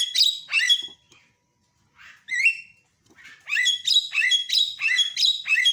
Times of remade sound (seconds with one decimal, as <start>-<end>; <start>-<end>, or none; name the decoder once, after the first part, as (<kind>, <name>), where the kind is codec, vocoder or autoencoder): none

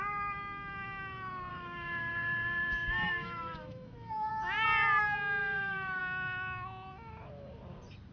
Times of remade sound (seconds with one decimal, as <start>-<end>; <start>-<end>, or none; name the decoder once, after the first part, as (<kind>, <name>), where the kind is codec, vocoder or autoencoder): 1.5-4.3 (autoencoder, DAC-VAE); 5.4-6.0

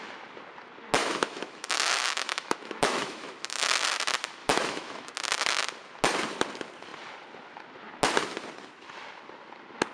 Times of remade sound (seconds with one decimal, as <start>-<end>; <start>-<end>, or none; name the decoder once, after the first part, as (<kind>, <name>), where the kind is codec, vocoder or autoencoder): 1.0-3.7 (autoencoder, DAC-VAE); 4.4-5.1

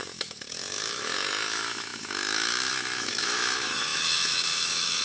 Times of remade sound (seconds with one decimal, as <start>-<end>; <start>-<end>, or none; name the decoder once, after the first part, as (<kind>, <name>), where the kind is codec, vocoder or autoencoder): 0.0-5.0 (autoencoder, DAC-VAE)

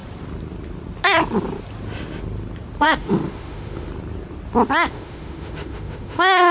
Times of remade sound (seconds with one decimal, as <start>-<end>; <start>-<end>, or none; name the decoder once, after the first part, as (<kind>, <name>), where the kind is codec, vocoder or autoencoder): 2.8-3.9 (autoencoder, DAC-VAE); 4.9-6.5

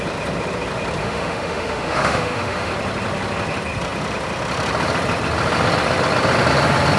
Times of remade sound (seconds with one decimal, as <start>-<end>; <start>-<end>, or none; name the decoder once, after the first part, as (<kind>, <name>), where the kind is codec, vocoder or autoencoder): 1.0-2.7 (autoencoder, DAC-VAE)